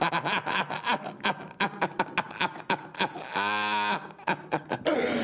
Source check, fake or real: real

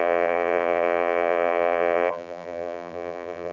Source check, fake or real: fake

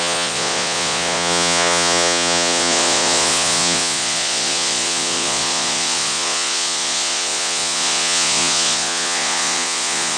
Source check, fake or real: fake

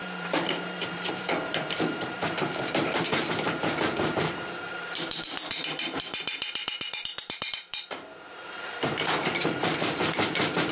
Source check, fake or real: fake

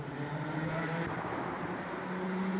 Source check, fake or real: fake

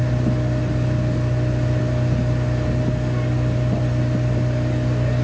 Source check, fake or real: real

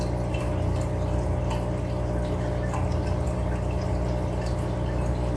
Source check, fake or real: real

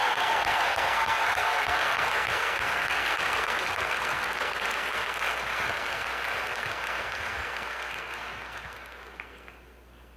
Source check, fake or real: fake